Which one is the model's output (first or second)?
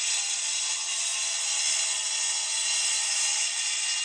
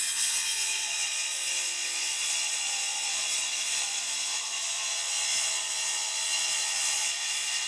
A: second